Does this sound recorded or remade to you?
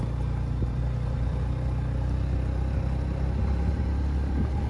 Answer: recorded